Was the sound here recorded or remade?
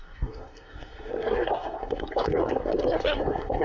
remade